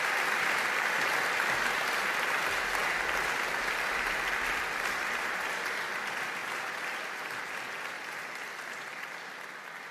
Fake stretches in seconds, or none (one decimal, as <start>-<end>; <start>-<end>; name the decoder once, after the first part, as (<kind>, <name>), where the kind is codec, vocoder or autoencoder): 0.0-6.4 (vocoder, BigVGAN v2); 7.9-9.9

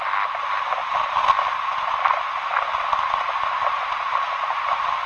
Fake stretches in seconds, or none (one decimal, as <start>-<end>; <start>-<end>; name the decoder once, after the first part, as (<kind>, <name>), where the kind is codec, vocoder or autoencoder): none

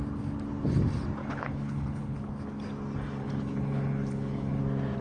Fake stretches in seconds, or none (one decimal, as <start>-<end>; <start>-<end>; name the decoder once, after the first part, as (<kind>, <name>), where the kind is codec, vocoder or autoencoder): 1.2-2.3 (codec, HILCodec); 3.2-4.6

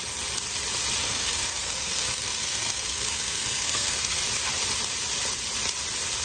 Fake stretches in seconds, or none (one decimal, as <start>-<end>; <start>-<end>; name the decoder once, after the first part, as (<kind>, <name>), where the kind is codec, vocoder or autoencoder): 1.0-4.2 (codec, SNAC)

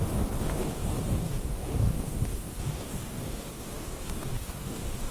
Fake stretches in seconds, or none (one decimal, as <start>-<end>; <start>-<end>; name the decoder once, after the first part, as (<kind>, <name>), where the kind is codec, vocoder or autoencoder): 0.0-5.1 (codec, DAC)

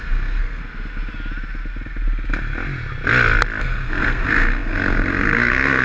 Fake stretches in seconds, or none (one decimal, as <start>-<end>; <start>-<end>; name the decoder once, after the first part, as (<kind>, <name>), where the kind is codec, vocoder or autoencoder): 0.0-0.6 (codec, SNAC); 3.6-5.8

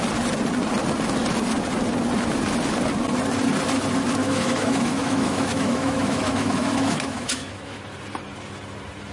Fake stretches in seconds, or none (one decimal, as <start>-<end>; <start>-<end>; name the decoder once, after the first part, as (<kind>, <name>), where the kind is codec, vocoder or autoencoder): 4.2-7.8 (autoencoder, DAC-VAE)